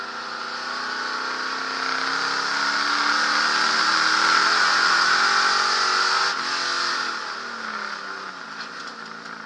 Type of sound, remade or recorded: recorded